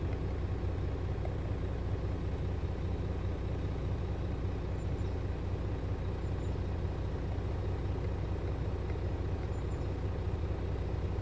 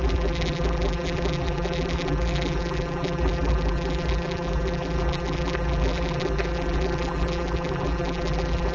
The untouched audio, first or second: first